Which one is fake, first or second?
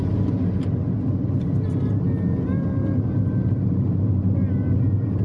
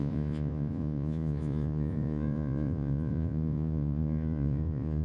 second